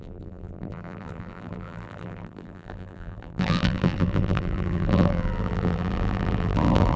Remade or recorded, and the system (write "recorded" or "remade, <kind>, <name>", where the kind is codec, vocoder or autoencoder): remade, vocoder, BigVGAN v2